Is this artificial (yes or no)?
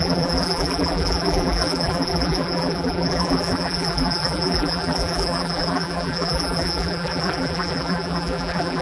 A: yes